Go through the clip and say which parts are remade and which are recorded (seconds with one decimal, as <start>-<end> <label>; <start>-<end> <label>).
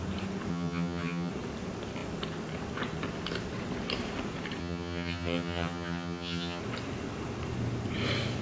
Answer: 0.0-0.5 recorded; 0.5-1.3 remade; 1.3-4.6 recorded; 4.6-6.6 remade; 6.6-8.4 recorded